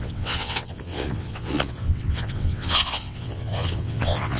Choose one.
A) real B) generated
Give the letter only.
B